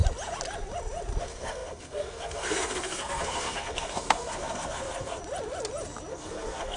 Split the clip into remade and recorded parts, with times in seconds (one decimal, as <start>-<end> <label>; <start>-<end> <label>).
0.0-1.2 recorded; 1.2-5.2 remade; 5.2-6.1 recorded; 6.1-6.8 remade